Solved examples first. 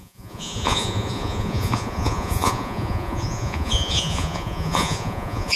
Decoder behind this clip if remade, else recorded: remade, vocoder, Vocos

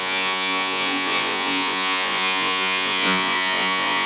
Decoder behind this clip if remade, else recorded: remade, vocoder, Vocos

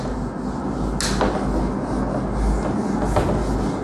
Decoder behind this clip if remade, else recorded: recorded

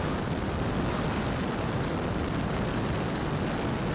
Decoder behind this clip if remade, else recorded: recorded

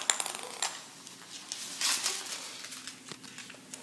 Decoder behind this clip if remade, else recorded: recorded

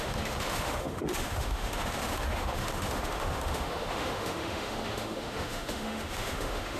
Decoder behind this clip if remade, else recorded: remade, autoencoder, DAC-VAE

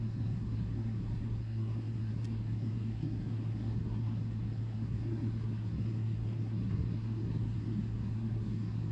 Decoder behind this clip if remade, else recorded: remade, codec, SNAC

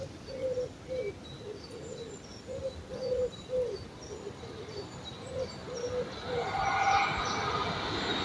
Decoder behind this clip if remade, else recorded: recorded